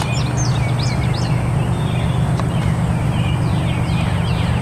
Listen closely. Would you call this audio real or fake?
real